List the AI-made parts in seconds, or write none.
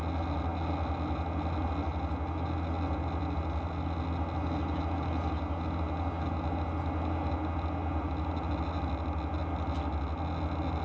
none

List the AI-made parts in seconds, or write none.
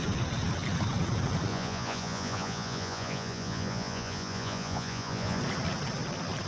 1.5-5.4 (vocoder, Vocos)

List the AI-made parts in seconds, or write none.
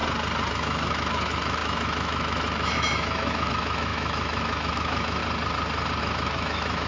0.5-5.2 (autoencoder, DAC-VAE); 6.0-6.9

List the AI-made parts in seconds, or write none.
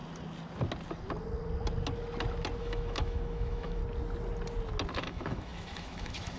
2.6-3.8 (autoencoder, DAC-VAE); 5.0-6.4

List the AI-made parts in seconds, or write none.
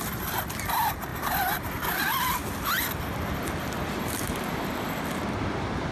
1.1-1.7 (vocoder, BigVGAN v2)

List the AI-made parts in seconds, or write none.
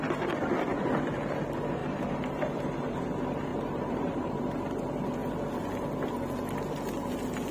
1.8-3.0 (vocoder, BigVGAN v2); 3.5-4.3